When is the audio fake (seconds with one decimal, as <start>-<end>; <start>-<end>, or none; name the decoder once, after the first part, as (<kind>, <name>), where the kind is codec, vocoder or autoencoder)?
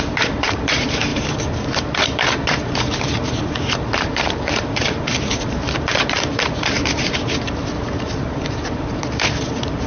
0.0-9.9 (vocoder, BigVGAN v2)